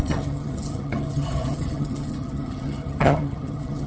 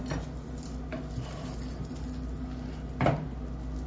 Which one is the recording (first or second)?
second